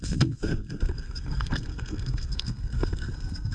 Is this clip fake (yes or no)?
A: yes